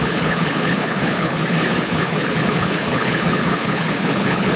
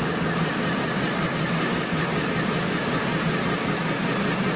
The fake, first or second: first